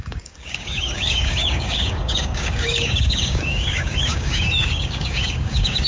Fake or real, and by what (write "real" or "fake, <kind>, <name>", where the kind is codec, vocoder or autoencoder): fake, codec, DAC